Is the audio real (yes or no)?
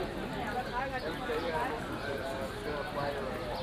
yes